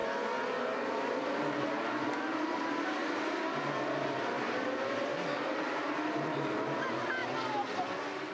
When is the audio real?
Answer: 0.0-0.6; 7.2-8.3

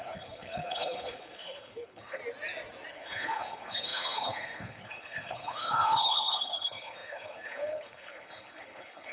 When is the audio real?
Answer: 2.2-2.9

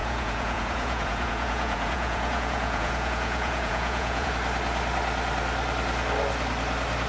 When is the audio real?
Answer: 4.3-7.1